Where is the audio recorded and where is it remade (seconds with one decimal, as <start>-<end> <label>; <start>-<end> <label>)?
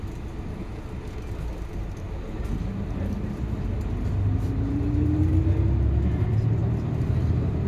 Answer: 0.0-7.7 recorded